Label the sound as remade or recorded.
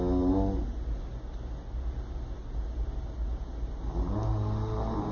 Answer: recorded